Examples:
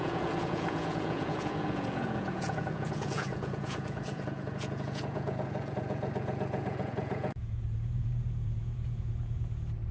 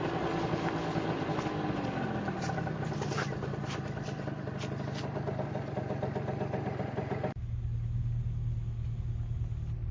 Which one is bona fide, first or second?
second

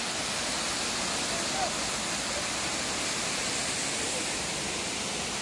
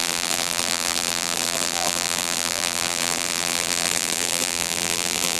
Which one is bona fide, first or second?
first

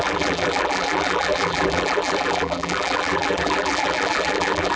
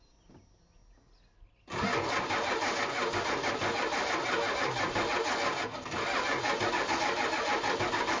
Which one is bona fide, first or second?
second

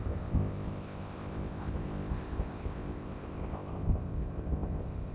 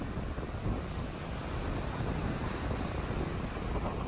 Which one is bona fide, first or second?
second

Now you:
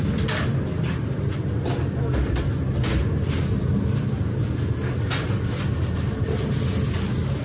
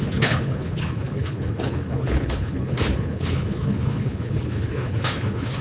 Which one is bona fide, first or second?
first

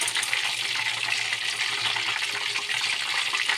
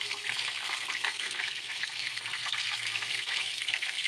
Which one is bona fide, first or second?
first